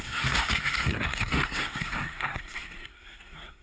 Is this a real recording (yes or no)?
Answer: no